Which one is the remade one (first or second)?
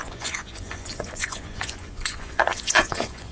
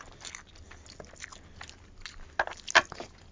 first